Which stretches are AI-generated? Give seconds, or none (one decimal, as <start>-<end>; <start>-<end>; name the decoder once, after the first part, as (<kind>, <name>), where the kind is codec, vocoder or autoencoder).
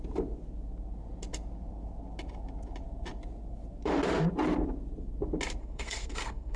5.6-6.6 (codec, SNAC)